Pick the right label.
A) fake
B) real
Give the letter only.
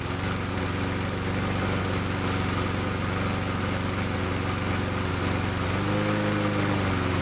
B